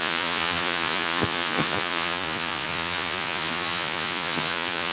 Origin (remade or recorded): remade